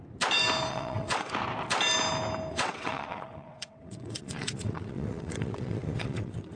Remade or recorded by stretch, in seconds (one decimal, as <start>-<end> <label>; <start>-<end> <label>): 0.0-0.7 recorded; 0.7-1.3 remade; 1.3-2.5 recorded; 2.5-6.6 remade